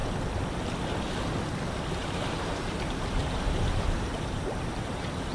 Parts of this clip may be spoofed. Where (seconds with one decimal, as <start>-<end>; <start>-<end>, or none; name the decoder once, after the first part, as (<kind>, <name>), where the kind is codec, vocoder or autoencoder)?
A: 2.0-5.3 (vocoder, BigVGAN v2)